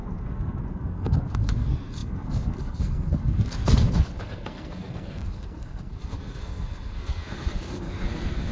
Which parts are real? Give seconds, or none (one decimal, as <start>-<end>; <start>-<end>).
none